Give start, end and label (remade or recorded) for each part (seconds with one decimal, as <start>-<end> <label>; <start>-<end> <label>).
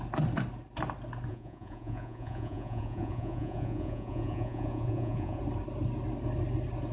0.0-1.3 recorded; 1.3-5.4 remade; 5.4-6.9 recorded